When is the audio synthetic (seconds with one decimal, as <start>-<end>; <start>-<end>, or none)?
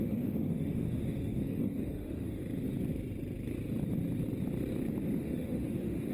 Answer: 0.0-2.4; 5.2-6.1